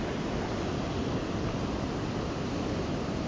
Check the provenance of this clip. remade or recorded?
recorded